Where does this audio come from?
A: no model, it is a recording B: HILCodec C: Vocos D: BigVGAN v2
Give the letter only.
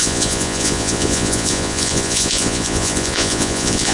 C